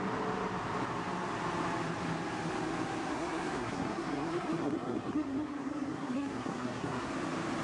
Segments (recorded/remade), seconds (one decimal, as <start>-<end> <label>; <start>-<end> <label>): 0.0-3.1 recorded; 3.1-7.1 remade; 7.1-7.6 recorded